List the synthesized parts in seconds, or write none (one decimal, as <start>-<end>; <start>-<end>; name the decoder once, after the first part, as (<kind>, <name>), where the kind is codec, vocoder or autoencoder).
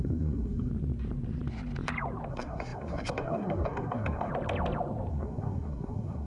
0.0-0.7 (codec, SNAC); 2.3-4.3; 5.1-6.3